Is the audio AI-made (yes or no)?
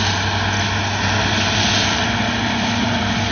no